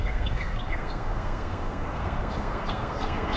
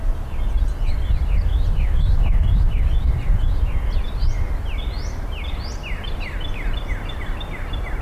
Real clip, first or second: second